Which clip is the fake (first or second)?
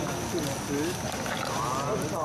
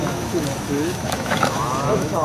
second